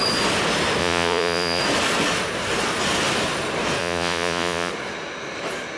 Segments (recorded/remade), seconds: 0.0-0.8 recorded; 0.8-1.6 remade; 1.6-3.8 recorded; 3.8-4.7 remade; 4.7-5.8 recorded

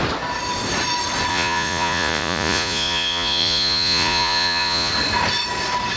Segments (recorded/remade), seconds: 0.0-1.3 recorded; 1.3-4.9 remade; 4.9-6.0 recorded

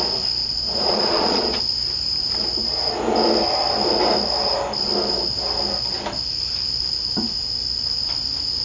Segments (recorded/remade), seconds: 0.0-0.4 recorded; 0.4-1.6 remade; 1.6-8.6 recorded

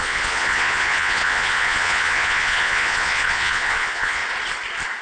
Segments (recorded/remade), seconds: 0.0-4.2 remade; 4.2-5.0 recorded

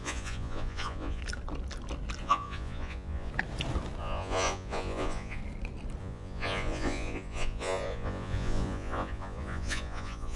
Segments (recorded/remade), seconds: 0.0-1.2 remade; 1.2-2.2 recorded; 2.2-3.3 remade; 3.3-4.0 recorded; 4.0-5.4 remade; 5.4-6.0 recorded; 6.0-10.4 remade

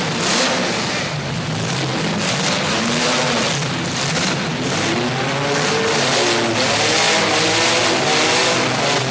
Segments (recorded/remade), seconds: 0.0-9.1 recorded

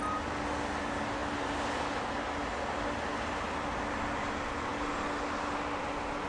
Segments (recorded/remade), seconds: 0.0-6.3 recorded

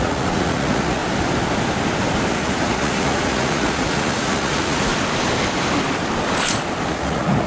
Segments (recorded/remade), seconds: 0.0-1.0 remade; 1.0-2.3 recorded; 2.3-4.9 remade; 4.9-6.9 recorded; 6.9-7.5 remade